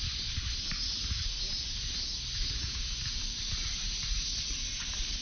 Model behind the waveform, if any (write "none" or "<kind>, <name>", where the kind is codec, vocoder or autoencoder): none